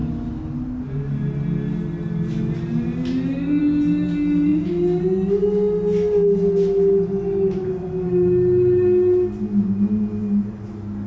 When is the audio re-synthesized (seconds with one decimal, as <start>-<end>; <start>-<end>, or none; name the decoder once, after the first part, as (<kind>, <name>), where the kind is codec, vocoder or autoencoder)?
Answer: none